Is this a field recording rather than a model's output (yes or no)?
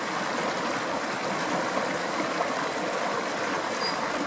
yes